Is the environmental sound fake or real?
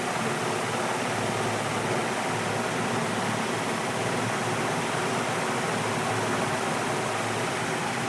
real